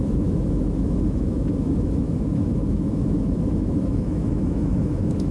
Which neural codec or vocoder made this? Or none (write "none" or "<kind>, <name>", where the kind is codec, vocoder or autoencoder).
autoencoder, DAC-VAE